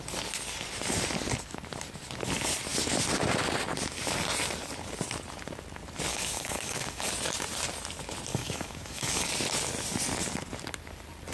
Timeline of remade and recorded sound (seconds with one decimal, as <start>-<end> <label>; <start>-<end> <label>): 0.0-6.1 recorded; 6.1-7.1 remade; 7.1-8.3 recorded; 8.3-9.3 remade; 9.3-11.3 recorded